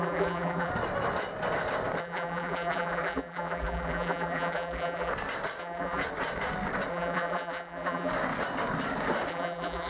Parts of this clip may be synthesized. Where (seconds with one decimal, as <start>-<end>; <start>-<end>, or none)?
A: 0.0-0.7; 2.0-5.1; 5.6-6.0; 6.9-8.1; 9.3-9.9